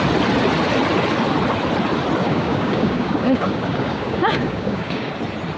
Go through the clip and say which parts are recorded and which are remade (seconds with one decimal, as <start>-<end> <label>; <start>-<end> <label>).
0.0-2.2 recorded; 2.2-5.1 remade; 5.1-5.6 recorded